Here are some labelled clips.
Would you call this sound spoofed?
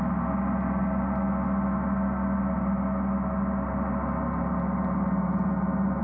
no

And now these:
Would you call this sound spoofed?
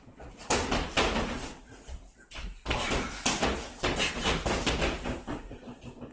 no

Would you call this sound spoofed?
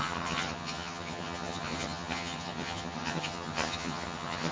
yes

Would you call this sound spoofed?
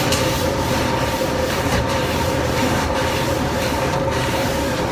yes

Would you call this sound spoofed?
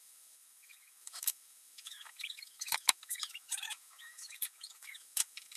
yes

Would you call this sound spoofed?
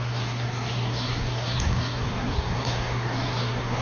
yes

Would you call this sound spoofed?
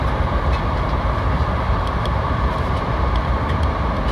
yes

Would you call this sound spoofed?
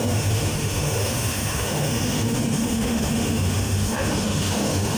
yes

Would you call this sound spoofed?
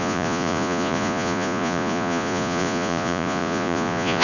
yes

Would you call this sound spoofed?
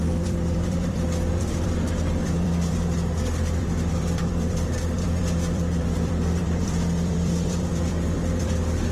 yes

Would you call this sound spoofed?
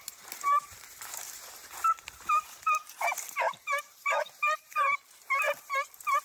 yes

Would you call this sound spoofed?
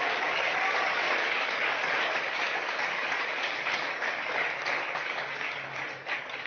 yes